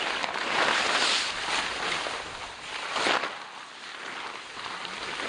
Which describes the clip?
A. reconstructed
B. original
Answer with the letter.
B